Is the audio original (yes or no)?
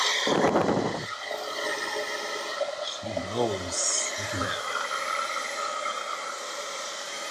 yes